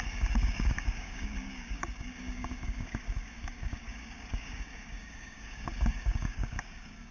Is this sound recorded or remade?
remade